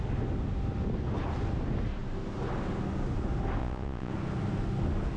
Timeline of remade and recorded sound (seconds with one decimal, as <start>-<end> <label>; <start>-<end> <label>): 0.0-3.6 recorded; 3.6-4.1 remade; 4.1-5.2 recorded